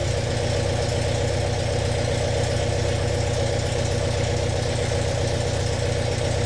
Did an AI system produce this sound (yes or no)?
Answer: no